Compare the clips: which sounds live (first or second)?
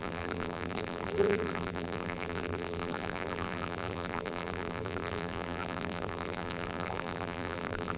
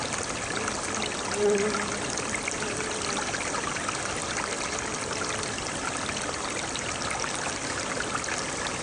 second